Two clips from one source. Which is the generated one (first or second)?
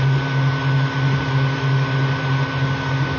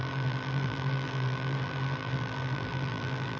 second